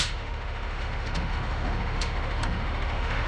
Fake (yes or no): yes